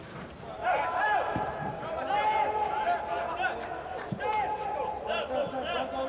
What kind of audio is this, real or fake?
real